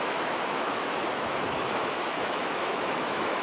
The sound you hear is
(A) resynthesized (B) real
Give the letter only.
A